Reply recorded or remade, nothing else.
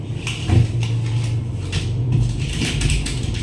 remade